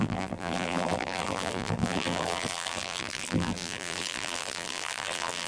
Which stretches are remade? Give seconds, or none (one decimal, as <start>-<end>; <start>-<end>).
0.0-5.5